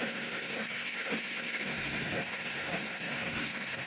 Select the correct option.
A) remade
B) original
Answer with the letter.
A